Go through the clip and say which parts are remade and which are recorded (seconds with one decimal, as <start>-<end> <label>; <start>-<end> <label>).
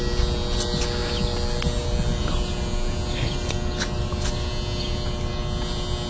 0.0-6.1 recorded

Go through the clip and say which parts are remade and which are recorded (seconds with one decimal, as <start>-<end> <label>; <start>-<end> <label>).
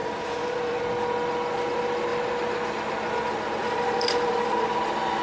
0.0-0.8 remade; 0.8-3.6 recorded; 3.6-4.8 remade; 4.8-5.2 recorded